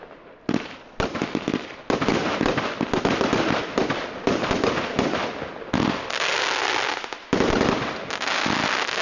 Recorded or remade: recorded